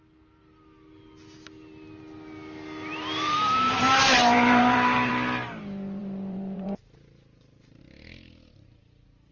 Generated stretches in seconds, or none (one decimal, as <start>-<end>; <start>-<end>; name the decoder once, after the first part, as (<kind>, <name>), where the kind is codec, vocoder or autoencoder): 2.9-3.8 (vocoder, BigVGAN v2); 4.2-5.1; 6.0-7.8